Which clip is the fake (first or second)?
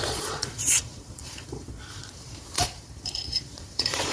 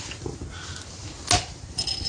first